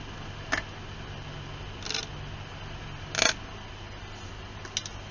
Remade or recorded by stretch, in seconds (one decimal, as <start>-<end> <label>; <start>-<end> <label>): 0.0-5.1 recorded